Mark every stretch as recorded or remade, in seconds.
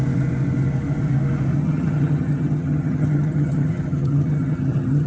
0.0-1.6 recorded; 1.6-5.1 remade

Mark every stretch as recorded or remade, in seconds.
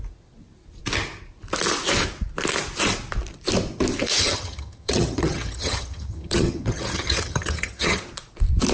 0.0-4.2 recorded; 4.2-8.0 remade; 8.0-8.7 recorded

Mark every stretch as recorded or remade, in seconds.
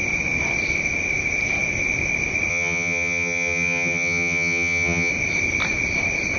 0.0-2.5 recorded; 2.5-5.1 remade; 5.1-6.4 recorded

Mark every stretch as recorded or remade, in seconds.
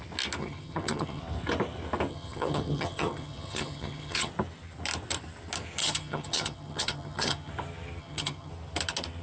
0.0-0.4 recorded; 0.4-1.2 remade; 1.2-2.1 recorded; 2.1-4.3 remade; 4.3-5.8 recorded; 5.8-7.5 remade; 7.5-8.0 recorded; 8.0-8.5 remade; 8.5-9.2 recorded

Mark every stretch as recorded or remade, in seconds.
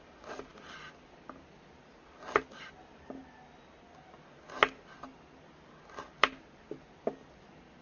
0.0-7.8 recorded